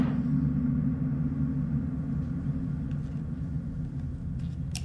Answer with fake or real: real